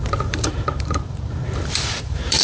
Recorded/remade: remade